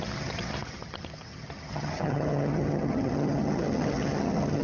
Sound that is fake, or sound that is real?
fake